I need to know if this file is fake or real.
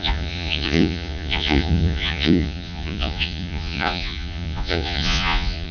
fake